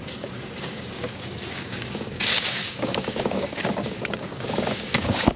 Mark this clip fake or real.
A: fake